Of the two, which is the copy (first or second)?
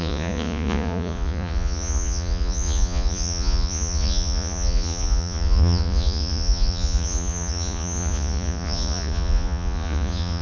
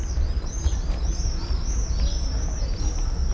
first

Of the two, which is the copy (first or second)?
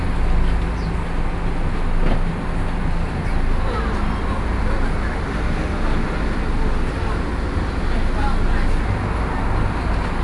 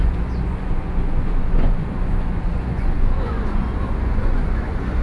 second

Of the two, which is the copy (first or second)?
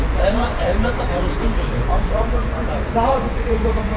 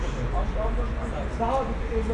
first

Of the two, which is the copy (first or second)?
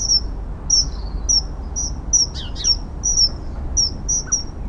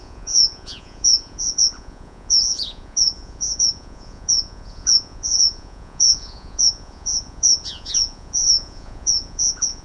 second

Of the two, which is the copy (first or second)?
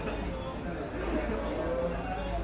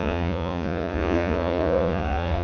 second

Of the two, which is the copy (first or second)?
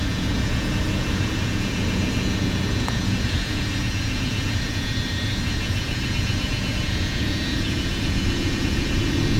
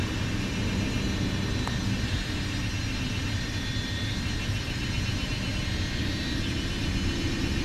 first